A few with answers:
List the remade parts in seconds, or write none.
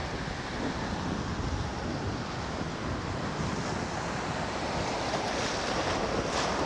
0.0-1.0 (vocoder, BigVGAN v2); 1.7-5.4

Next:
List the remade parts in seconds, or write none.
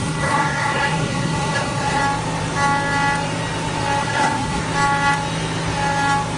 0.0-2.0 (codec, SNAC); 4.0-4.6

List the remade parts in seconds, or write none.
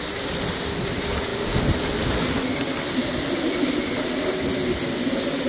none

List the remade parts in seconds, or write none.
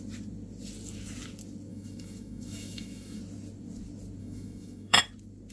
1.7-3.2 (autoencoder, DAC-VAE); 4.2-5.0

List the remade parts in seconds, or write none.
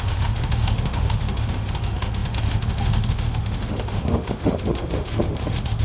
0.0-5.8 (autoencoder, DAC-VAE)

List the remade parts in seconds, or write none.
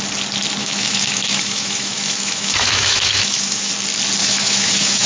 0.6-3.7 (autoencoder, DAC-VAE); 4.2-5.1